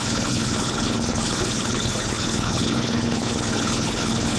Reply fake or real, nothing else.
fake